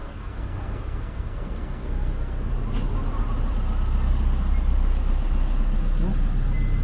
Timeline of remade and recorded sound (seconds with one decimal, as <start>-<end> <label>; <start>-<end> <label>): 0.0-2.5 remade; 2.5-6.8 recorded